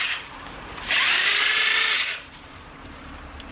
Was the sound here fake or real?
fake